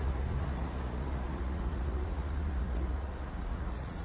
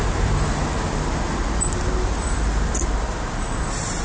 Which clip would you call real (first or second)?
second